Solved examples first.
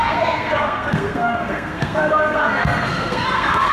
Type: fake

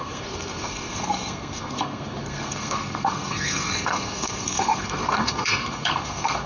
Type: fake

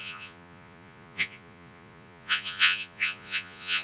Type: fake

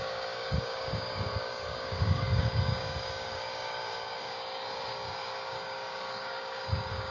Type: fake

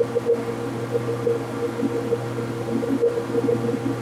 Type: real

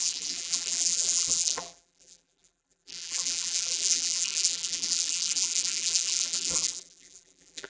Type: fake